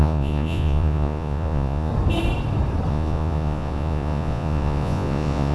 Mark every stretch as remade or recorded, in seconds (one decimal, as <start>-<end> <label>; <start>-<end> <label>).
0.0-1.9 remade; 1.9-2.9 recorded; 2.9-5.5 remade